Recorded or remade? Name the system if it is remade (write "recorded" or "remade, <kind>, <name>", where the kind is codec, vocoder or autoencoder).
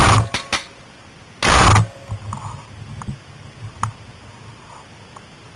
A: recorded